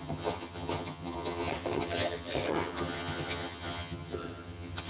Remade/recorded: remade